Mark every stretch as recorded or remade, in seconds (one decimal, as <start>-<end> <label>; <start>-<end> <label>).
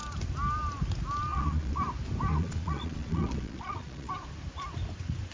0.0-1.3 recorded; 1.3-1.8 remade; 1.8-2.3 recorded; 2.3-4.1 remade; 4.1-5.3 recorded